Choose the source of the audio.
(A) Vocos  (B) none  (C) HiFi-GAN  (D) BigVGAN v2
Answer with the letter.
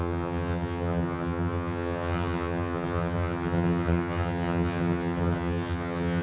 C